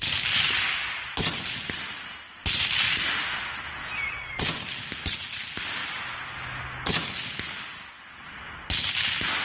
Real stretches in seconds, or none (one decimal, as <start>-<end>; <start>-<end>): 0.0-9.4